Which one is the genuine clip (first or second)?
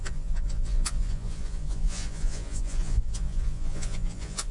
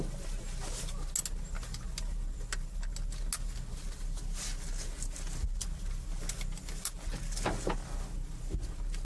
second